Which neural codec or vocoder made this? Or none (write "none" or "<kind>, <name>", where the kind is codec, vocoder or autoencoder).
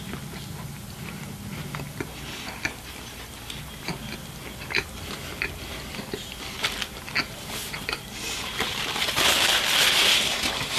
none